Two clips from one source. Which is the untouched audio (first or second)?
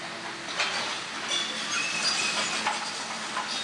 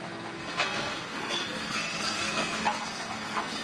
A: first